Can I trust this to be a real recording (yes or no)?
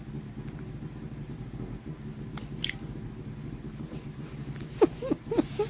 yes